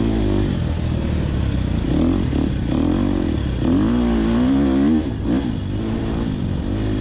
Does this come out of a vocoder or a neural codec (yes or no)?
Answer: no